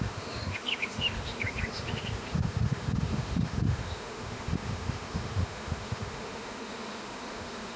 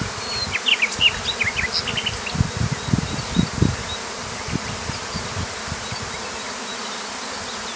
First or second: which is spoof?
first